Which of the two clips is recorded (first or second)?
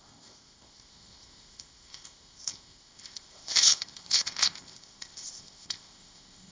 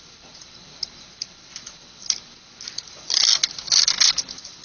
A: second